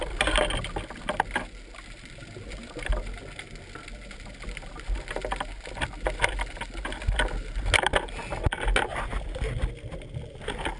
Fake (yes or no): no